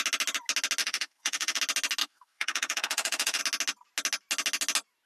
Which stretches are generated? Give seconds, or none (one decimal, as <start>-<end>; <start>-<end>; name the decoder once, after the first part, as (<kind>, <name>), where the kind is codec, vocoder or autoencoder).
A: 0.8-1.6 (autoencoder, DAC-VAE); 2.0-3.4